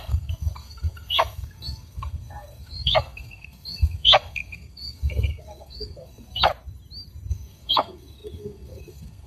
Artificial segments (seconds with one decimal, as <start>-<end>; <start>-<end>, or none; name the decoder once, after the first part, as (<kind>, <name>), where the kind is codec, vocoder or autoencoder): 0.0-6.5 (codec, SNAC); 7.3-9.3